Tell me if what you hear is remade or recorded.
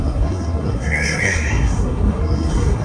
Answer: remade